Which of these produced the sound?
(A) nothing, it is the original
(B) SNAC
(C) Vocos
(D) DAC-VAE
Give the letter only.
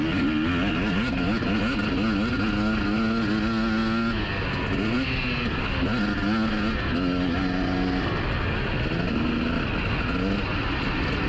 A